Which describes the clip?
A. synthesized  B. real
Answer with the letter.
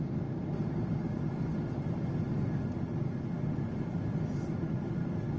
B